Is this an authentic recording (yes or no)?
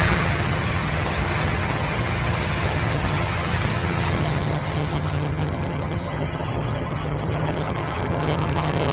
no